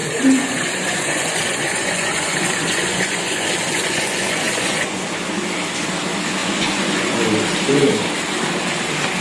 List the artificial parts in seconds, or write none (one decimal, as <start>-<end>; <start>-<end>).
0.0-5.0; 6.4-7.2